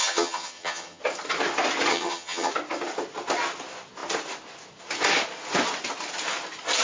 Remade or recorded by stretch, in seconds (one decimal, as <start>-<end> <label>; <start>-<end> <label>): 0.0-1.0 remade; 1.0-1.9 recorded; 1.9-2.5 remade; 2.5-6.8 recorded